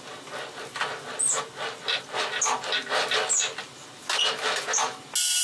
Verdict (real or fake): real